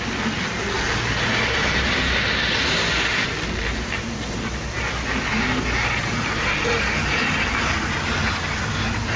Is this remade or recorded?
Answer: recorded